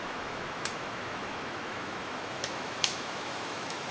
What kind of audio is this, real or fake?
fake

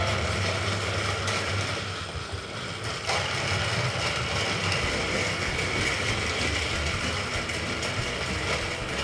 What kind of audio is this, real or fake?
real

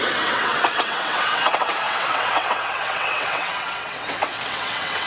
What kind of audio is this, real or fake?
fake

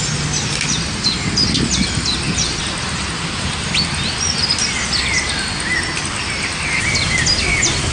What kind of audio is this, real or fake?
real